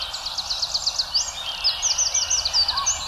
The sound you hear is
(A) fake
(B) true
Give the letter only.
B